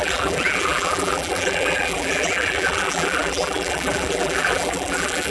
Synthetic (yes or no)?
yes